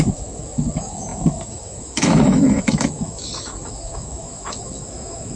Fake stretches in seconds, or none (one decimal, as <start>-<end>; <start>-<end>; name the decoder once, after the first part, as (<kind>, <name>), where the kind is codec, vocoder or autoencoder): 0.0-5.4 (autoencoder, DAC-VAE)